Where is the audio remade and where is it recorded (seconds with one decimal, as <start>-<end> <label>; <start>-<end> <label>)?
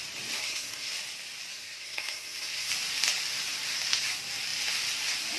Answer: 0.0-0.4 recorded; 0.4-0.9 remade; 0.9-1.5 recorded; 1.5-2.7 remade; 2.7-5.4 recorded